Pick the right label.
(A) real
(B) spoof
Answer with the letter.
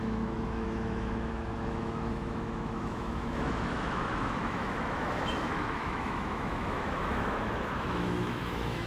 B